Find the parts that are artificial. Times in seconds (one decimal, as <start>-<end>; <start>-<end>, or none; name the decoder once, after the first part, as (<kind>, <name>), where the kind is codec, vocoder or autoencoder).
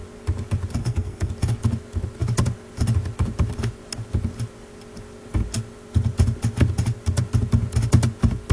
0.8-1.3 (codec, SNAC)